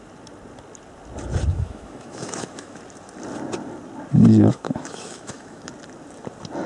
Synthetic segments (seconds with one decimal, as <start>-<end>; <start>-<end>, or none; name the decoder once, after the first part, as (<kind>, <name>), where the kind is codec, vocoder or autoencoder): 1.5-2.8 (autoencoder, DAC-VAE); 4.5-5.6